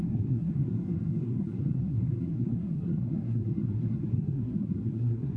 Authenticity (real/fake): fake